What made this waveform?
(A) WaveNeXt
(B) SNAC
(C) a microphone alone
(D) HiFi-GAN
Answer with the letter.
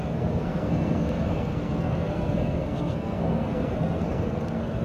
B